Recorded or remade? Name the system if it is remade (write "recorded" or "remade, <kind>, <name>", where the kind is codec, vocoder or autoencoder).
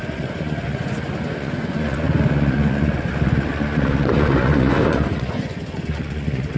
remade, vocoder, Vocos